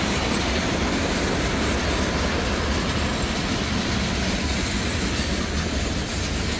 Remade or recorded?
recorded